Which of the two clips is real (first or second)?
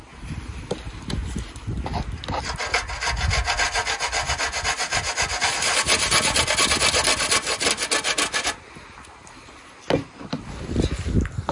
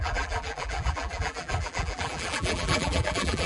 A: first